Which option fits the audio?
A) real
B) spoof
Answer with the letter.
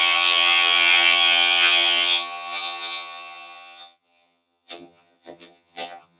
B